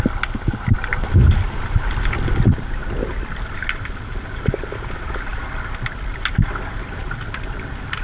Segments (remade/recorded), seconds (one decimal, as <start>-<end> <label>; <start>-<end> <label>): 0.0-8.0 recorded